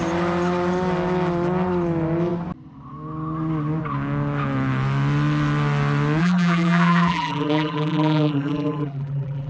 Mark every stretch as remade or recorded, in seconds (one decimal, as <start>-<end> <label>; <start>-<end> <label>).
0.0-6.2 recorded; 6.2-9.5 remade